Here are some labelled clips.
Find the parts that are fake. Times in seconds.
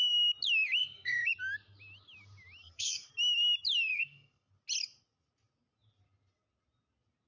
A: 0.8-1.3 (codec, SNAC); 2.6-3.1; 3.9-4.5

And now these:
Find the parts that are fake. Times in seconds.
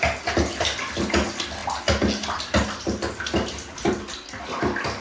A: none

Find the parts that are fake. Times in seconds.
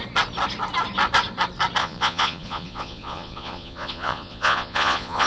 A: 1.8-5.3 (vocoder, Vocos)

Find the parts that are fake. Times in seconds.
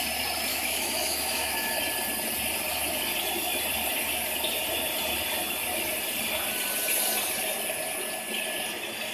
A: 0.5-1.8 (autoencoder, DAC-VAE)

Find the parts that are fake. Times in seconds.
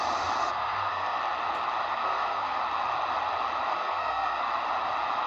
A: 0.4-1.2 (codec, SNAC); 1.9-2.6; 3.7-4.4